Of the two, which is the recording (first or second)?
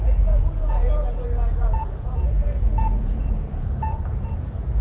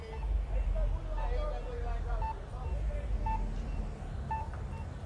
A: second